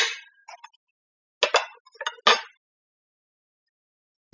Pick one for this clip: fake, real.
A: real